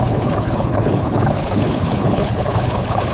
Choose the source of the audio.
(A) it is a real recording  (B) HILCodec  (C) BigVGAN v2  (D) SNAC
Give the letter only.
B